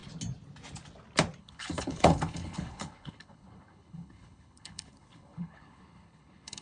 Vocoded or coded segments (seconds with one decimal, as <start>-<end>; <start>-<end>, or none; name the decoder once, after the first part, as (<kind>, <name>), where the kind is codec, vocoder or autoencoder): 1.4-6.6 (codec, HILCodec)